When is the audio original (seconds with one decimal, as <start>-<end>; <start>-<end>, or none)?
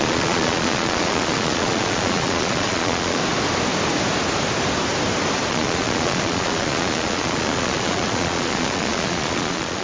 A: 3.2-5.5